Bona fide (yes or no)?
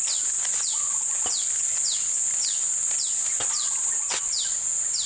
yes